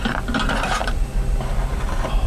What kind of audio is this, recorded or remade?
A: recorded